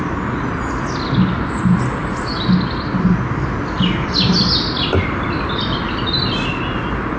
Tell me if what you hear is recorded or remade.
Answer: recorded